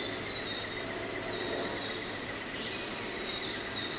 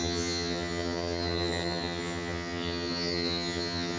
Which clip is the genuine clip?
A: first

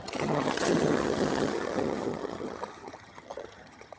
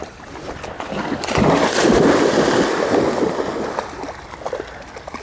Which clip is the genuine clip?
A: second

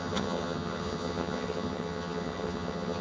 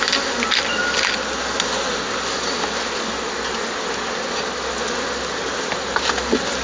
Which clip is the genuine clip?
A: second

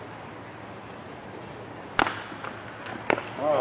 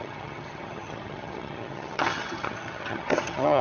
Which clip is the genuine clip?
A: first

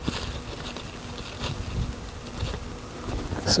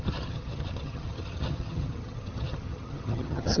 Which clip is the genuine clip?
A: first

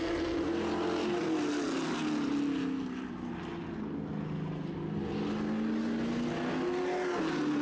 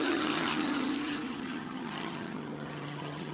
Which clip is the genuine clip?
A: first